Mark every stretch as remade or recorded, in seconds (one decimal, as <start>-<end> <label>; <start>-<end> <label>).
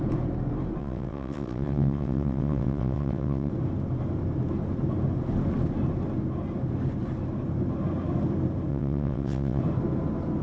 0.0-0.8 recorded; 0.8-3.5 remade; 3.5-8.7 recorded; 8.7-9.6 remade; 9.6-10.4 recorded